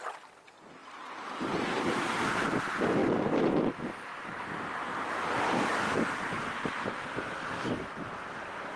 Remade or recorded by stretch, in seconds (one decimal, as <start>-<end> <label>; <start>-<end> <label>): 0.0-0.8 recorded; 0.8-2.6 remade; 2.6-3.0 recorded; 3.0-3.6 remade; 3.6-4.1 recorded; 4.1-6.6 remade; 6.6-8.8 recorded